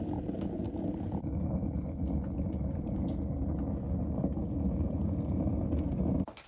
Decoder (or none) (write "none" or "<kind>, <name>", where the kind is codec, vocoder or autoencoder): none